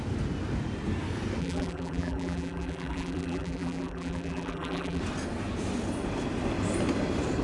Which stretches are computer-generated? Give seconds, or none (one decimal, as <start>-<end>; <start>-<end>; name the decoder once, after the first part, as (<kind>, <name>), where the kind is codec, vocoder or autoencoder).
1.4-5.0 (vocoder, BigVGAN v2)